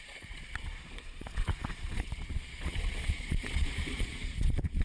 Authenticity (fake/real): fake